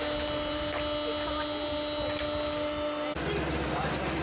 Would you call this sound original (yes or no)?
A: yes